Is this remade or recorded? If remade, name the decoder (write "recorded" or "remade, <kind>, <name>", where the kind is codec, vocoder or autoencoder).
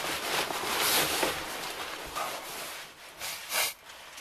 recorded